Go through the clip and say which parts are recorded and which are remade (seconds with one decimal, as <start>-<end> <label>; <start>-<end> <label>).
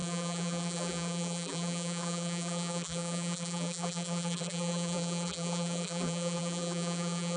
0.0-7.4 remade